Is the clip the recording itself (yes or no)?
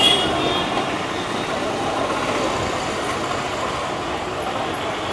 yes